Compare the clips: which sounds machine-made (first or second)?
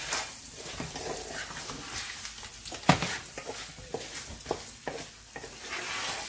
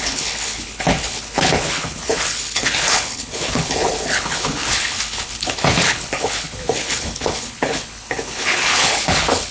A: second